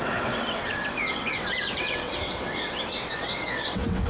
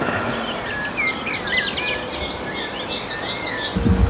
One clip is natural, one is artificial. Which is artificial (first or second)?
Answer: first